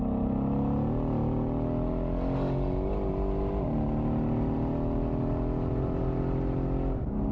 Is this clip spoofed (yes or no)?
no